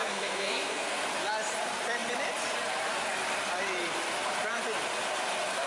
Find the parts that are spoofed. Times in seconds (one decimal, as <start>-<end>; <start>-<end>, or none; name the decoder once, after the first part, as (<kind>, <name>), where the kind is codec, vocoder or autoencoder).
0.0-1.0 (codec, SNAC)

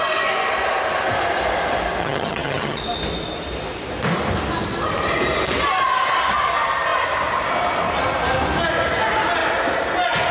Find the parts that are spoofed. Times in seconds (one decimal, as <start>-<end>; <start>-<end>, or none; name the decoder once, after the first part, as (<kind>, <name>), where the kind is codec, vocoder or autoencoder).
2.0-2.8 (vocoder, HiFi-GAN)

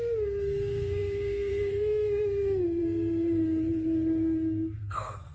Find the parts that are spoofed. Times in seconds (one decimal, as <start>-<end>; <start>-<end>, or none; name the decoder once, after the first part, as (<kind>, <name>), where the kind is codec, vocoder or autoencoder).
0.0-5.3 (codec, SNAC)